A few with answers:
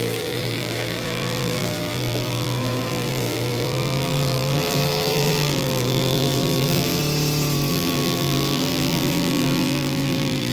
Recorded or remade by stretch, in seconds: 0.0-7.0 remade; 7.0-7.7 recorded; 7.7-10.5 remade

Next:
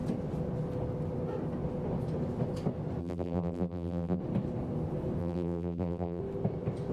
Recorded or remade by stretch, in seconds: 0.0-3.0 recorded; 3.0-4.2 remade; 4.2-5.2 recorded; 5.2-6.2 remade; 6.2-6.9 recorded